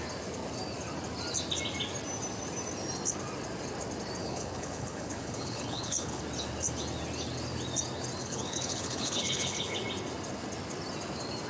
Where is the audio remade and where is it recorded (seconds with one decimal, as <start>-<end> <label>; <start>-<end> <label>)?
0.0-4.2 recorded; 4.2-6.2 remade; 6.2-8.2 recorded; 8.2-9.8 remade; 9.8-11.5 recorded